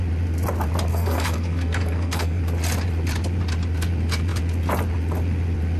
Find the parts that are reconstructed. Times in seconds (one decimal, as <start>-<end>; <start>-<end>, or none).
0.9-2.4